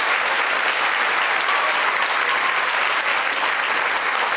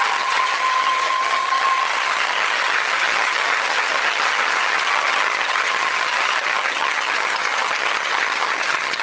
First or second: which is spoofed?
second